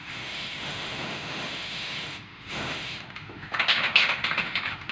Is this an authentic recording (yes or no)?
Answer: no